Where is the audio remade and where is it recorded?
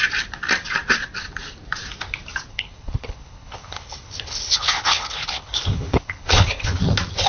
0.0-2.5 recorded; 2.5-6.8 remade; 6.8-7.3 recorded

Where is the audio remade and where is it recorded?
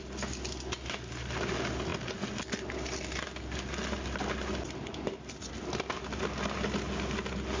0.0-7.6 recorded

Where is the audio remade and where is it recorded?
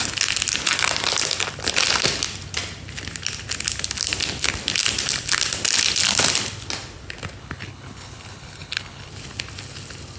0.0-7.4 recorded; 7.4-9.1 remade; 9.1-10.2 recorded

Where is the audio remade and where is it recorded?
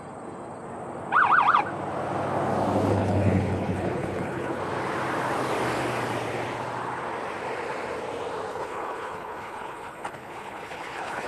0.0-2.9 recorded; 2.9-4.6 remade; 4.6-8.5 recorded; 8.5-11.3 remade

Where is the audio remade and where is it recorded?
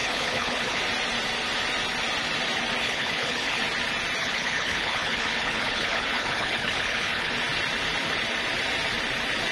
0.0-0.8 remade; 0.8-2.8 recorded; 2.8-3.6 remade; 3.6-4.2 recorded; 4.2-7.3 remade; 7.3-9.5 recorded